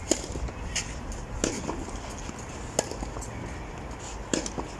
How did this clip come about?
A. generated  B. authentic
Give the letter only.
B